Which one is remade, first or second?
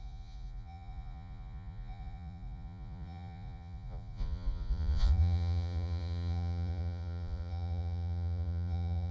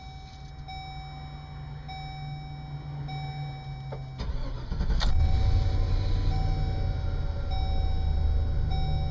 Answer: first